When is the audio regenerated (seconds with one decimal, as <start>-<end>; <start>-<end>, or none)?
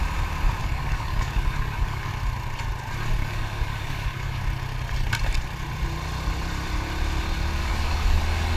0.6-2.1; 3.2-4.4; 7.6-8.2